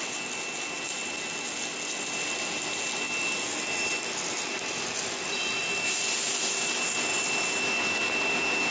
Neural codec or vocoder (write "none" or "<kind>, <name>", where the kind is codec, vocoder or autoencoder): none